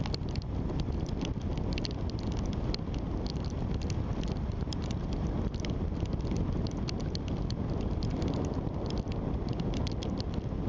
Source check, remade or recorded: recorded